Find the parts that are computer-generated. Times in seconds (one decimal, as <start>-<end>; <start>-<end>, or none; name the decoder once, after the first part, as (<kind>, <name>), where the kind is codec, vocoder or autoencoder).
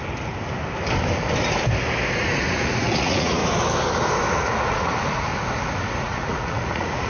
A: 2.1-3.4 (vocoder, Vocos); 4.3-5.3; 6.0-7.1